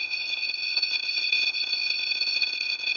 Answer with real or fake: fake